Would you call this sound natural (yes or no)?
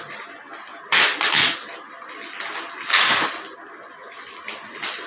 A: yes